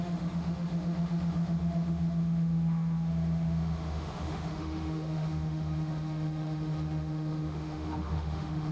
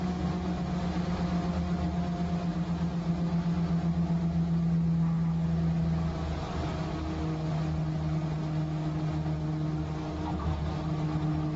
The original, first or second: second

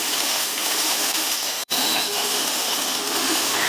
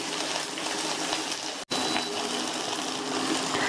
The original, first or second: second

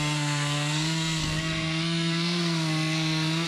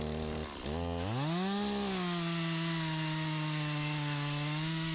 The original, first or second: second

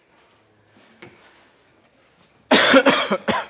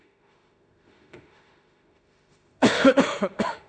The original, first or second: first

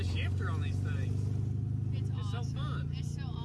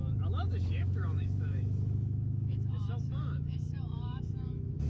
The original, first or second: first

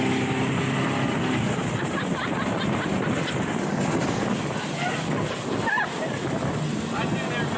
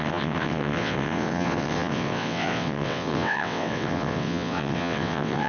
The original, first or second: first